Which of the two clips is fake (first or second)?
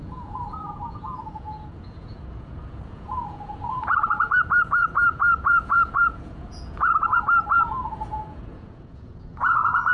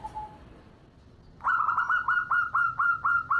first